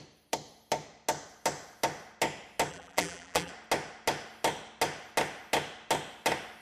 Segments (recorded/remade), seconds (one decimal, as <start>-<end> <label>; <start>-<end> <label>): 0.0-2.7 recorded; 2.7-3.5 remade; 3.5-6.6 recorded